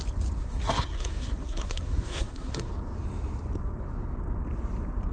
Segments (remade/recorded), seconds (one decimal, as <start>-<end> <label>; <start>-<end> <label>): 0.0-0.4 recorded; 0.4-2.7 remade; 2.7-5.1 recorded